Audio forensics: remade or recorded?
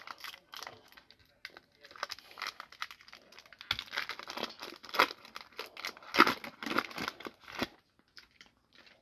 recorded